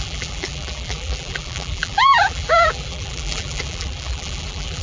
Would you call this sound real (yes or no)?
no